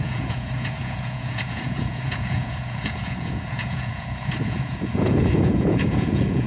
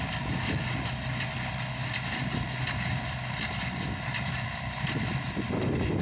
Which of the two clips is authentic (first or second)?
second